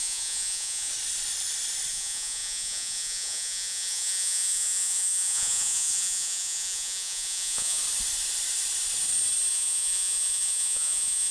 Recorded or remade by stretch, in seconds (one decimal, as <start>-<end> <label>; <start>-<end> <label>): 0.0-0.9 remade; 0.9-1.9 recorded; 1.9-7.8 remade; 7.8-9.5 recorded; 9.5-11.3 remade